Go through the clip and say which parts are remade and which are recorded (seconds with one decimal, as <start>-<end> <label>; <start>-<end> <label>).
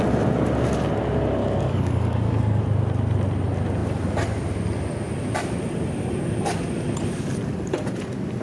0.0-1.4 recorded; 1.4-2.6 remade; 2.6-8.4 recorded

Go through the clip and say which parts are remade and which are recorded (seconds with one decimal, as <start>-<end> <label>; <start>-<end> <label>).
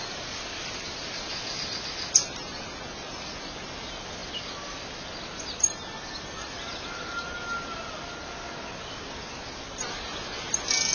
0.0-10.9 recorded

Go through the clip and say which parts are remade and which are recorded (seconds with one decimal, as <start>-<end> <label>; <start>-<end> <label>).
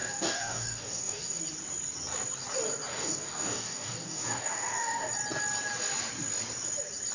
0.0-1.4 remade; 1.4-2.9 recorded; 2.9-5.1 remade; 5.1-7.1 recorded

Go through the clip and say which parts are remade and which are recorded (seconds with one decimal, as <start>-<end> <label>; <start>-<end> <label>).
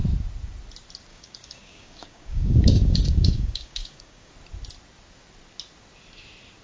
0.0-1.1 recorded; 1.1-4.3 remade; 4.3-6.6 recorded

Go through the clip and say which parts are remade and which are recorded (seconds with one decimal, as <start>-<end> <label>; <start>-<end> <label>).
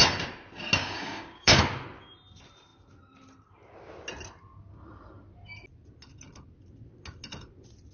0.0-0.8 recorded; 0.8-1.6 remade; 1.6-7.9 recorded